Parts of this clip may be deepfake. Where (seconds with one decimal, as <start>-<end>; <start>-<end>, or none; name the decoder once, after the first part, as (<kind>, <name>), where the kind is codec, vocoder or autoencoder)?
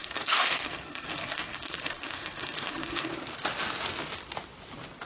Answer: 0.0-3.1 (codec, SNAC)